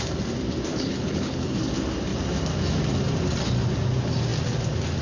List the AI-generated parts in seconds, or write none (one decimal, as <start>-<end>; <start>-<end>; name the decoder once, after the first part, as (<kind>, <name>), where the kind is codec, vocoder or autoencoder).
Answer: 0.7-1.6 (codec, HILCodec)